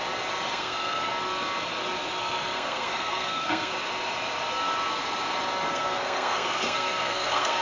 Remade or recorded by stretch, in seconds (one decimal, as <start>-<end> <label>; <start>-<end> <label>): 0.0-0.5 recorded; 0.5-1.1 remade; 1.1-2.2 recorded; 2.2-3.7 remade; 3.7-5.7 recorded; 5.7-7.6 remade